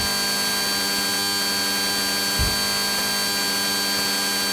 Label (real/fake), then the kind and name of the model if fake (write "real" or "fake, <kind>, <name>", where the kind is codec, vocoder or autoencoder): real